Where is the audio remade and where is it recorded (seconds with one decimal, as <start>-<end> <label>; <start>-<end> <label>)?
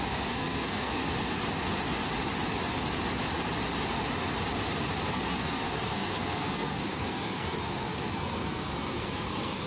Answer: 0.0-1.0 remade; 1.0-5.1 recorded; 5.1-9.7 remade